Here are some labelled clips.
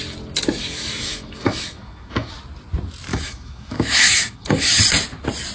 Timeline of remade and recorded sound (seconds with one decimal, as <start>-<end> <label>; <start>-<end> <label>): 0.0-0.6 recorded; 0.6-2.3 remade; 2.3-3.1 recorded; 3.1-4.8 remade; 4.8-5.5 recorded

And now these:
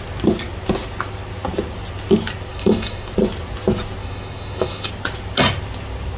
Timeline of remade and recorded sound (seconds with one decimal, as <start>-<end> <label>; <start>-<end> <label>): 0.0-2.5 recorded; 2.5-3.1 remade; 3.1-4.0 recorded; 4.0-4.9 remade; 4.9-6.2 recorded

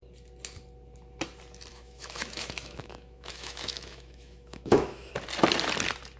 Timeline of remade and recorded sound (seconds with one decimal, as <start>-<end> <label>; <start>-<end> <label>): 0.0-1.7 recorded; 1.7-5.1 remade; 5.1-6.2 recorded

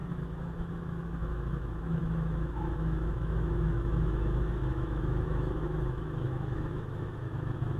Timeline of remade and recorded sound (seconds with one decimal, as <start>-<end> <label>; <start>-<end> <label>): 0.0-7.8 remade

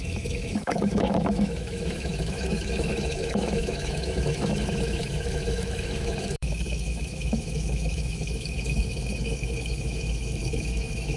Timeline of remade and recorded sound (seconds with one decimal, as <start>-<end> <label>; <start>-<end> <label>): 0.0-11.2 remade

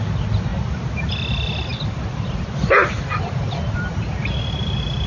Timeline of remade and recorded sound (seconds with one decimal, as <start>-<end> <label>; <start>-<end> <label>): 0.0-5.1 recorded